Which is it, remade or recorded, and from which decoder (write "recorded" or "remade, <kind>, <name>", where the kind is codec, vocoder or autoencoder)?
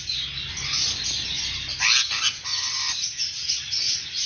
recorded